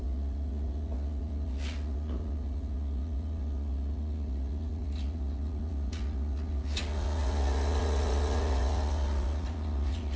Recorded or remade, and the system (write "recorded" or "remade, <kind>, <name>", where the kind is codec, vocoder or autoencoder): remade, vocoder, Vocos